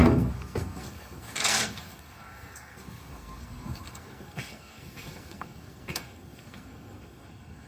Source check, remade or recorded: remade